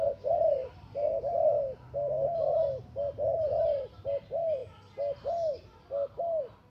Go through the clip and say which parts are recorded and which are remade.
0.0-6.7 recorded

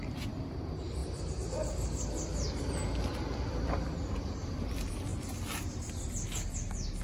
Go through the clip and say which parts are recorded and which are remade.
0.0-5.1 remade; 5.1-7.0 recorded

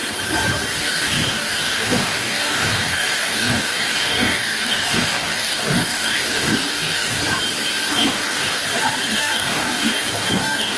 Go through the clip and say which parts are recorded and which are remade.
0.0-0.8 recorded; 0.8-7.2 remade; 7.2-7.9 recorded; 7.9-8.6 remade; 8.6-9.1 recorded; 9.1-10.8 remade

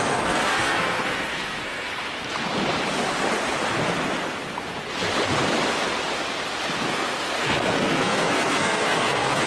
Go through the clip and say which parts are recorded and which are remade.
0.0-2.0 remade; 2.0-6.9 recorded; 6.9-9.5 remade